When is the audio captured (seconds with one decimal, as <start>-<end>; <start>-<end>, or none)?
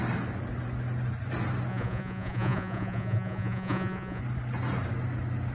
0.0-1.7; 4.2-5.5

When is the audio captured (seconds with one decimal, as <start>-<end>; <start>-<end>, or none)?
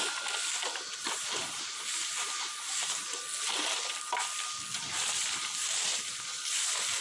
0.0-1.0; 3.2-5.9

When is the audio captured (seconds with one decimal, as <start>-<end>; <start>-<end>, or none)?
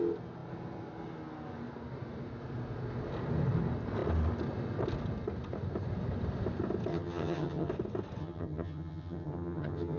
0.0-6.9; 7.7-8.2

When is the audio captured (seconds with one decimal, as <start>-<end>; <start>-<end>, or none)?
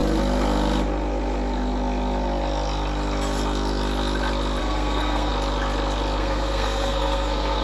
0.0-4.6; 5.3-6.2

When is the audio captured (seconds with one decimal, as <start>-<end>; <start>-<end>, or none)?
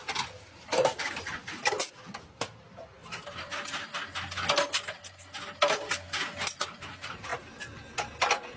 3.0-6.6; 7.3-8.6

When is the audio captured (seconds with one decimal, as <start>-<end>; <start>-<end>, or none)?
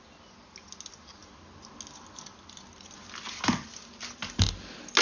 0.0-5.0